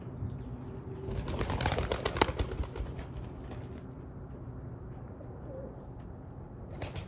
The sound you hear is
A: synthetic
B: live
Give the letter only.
B